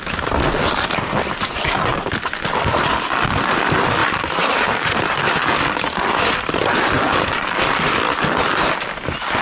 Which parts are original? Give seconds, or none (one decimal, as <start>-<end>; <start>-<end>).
0.0-4.0; 5.0-9.4